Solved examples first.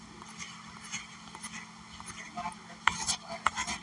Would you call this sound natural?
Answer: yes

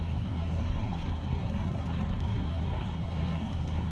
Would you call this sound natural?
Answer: no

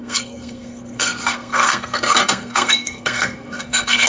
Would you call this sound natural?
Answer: no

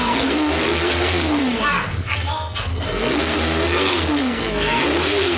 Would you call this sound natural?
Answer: no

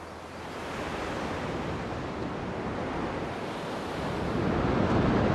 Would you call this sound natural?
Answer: yes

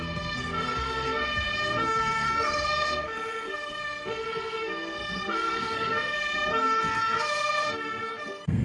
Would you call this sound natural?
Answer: no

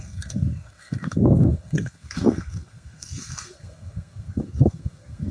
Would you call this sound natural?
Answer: no